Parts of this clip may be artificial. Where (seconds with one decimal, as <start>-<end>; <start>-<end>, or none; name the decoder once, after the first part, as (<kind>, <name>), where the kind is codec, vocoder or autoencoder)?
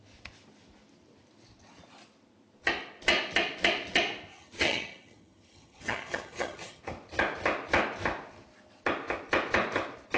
4.3-6.8 (vocoder, HiFi-GAN)